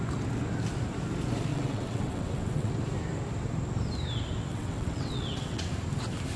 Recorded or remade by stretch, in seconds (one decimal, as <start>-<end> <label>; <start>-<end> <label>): 0.0-1.5 recorded; 1.5-2.7 remade; 2.7-4.5 recorded; 4.5-5.7 remade; 5.7-6.4 recorded